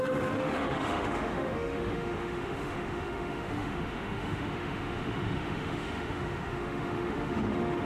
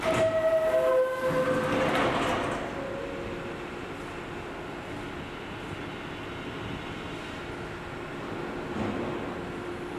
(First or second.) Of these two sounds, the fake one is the first